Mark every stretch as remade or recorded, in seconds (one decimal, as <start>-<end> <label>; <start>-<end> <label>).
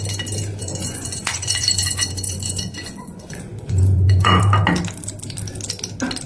0.0-0.6 recorded; 0.6-4.4 remade; 4.4-6.3 recorded